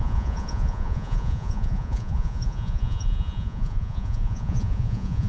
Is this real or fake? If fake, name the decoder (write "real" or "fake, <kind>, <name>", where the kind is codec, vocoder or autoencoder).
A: fake, vocoder, Vocos